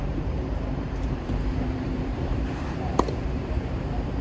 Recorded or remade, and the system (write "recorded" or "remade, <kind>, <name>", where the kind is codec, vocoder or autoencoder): remade, vocoder, BigVGAN v2